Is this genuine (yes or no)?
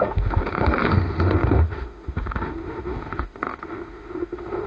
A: no